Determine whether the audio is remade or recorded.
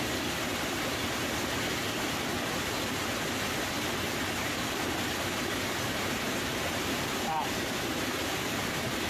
recorded